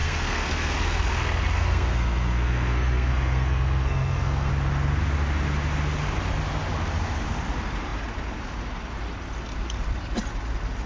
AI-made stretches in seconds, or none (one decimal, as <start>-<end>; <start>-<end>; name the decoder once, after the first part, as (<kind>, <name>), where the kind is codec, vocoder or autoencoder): 0.0-4.5 (codec, SNAC)